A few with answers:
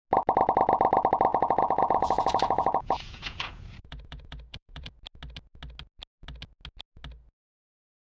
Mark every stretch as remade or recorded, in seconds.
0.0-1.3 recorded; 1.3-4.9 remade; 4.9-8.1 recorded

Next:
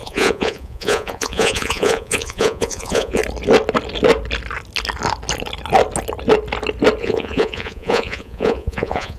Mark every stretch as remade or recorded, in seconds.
0.0-3.2 remade; 3.2-7.0 recorded; 7.0-9.2 remade

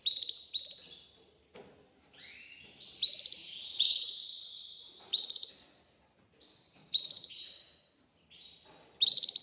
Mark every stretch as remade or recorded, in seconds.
0.0-3.4 recorded; 3.4-5.5 remade; 5.5-6.8 recorded; 6.8-7.6 remade; 7.6-9.4 recorded

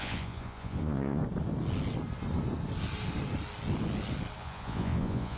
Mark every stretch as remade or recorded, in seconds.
0.0-1.2 remade; 1.2-4.4 recorded; 4.4-5.4 remade

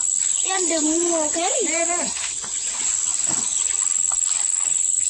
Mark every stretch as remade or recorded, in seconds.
0.0-5.1 recorded

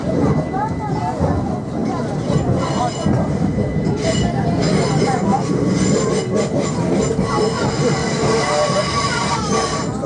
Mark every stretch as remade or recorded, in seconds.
0.0-10.1 recorded